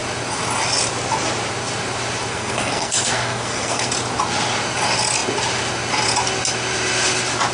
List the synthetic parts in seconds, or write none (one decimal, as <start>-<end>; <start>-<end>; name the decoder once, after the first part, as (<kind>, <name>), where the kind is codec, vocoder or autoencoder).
2.3-3.9 (codec, SNAC)

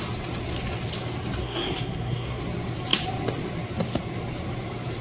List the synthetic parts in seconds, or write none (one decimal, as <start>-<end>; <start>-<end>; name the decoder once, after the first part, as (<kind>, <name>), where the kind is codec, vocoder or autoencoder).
1.4-2.4 (codec, SNAC)

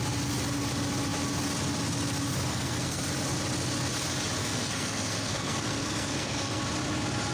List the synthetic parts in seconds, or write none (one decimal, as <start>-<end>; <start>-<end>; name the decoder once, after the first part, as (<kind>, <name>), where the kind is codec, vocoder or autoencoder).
2.5-3.0 (codec, SNAC); 4.4-6.6

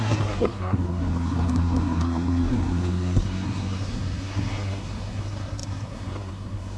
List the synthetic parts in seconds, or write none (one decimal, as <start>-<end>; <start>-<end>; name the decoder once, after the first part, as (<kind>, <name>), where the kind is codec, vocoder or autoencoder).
0.0-6.8 (codec, SNAC)

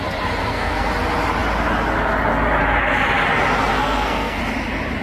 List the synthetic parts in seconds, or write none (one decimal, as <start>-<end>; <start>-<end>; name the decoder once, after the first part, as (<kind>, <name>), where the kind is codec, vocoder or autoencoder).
0.4-0.9 (codec, SNAC); 3.7-4.4

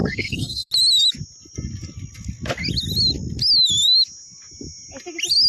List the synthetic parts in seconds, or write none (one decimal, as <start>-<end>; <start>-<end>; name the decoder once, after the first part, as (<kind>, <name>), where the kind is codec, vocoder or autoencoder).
0.0-0.7 (codec, SNAC)

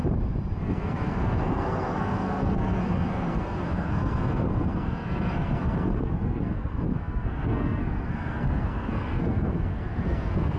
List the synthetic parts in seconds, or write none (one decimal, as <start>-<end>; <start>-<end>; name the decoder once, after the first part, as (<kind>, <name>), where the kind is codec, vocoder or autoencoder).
0.6-10.6 (codec, SNAC)